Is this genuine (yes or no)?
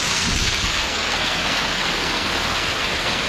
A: no